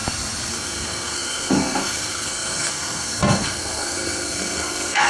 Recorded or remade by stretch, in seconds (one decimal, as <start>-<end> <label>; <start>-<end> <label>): 0.0-0.5 recorded; 0.5-5.1 remade

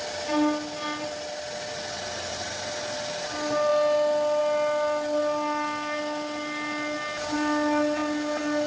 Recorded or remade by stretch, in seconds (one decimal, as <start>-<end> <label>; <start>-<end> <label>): 0.0-8.7 recorded

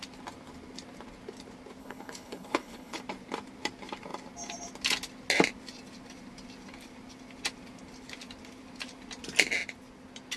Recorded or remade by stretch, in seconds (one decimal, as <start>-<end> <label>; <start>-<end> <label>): 0.0-1.8 recorded; 1.8-3.0 remade; 3.0-10.4 recorded